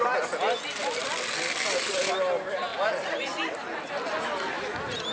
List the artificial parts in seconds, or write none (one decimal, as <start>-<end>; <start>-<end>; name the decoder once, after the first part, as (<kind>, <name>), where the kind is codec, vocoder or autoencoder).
none